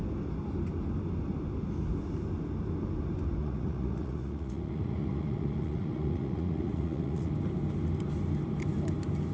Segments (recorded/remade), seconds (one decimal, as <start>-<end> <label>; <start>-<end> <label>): 0.0-3.4 recorded; 3.4-7.3 remade; 7.3-9.3 recorded